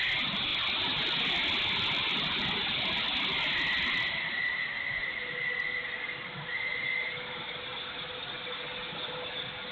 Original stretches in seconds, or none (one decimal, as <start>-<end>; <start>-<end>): 0.0-9.7